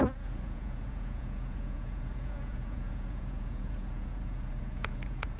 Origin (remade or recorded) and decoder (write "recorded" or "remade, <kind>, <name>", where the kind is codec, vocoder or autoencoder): remade, vocoder, Vocos